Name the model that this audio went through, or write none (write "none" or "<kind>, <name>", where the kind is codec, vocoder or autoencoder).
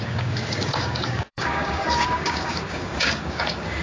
codec, DAC